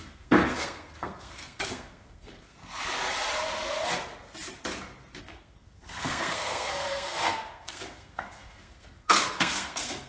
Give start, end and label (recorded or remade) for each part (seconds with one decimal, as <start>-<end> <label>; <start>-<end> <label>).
0.0-2.6 remade; 2.6-5.2 recorded; 5.2-10.1 remade